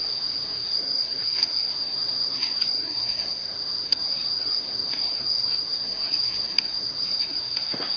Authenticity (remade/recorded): remade